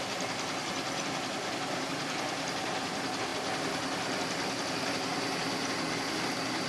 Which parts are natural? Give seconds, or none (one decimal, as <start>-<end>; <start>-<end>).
0.0-6.7